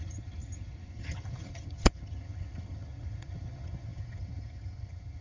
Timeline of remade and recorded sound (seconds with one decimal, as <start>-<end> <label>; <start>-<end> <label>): 0.0-5.2 remade